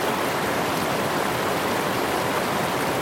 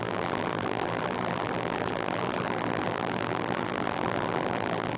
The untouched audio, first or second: first